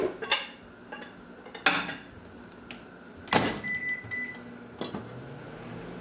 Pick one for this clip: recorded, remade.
recorded